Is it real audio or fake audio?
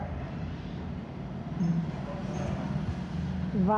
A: real